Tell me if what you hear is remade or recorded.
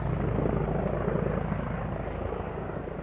recorded